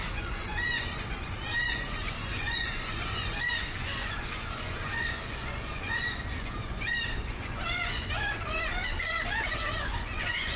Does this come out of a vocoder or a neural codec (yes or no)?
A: yes